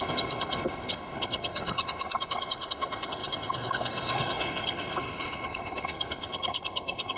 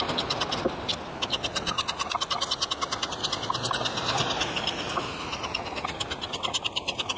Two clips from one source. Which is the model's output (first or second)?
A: first